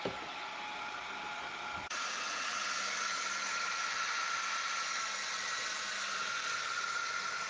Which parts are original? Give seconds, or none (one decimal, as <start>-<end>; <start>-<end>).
0.0-1.8; 2.5-7.5